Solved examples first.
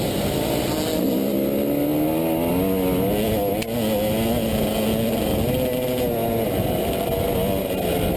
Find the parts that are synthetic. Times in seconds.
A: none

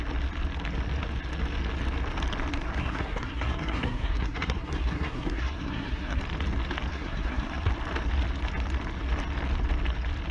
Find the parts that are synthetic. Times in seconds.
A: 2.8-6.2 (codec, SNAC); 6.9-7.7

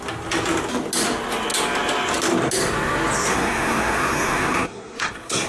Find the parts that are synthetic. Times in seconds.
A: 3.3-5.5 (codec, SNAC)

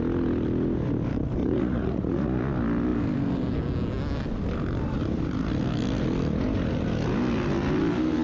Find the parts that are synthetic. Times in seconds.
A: 1.4-2.4 (vocoder, Vocos)